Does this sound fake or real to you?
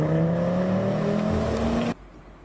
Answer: real